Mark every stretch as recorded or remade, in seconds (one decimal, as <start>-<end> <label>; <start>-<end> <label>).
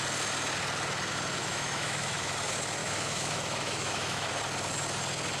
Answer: 0.0-1.4 recorded; 1.4-2.3 remade; 2.3-2.8 recorded; 2.8-4.3 remade; 4.3-5.4 recorded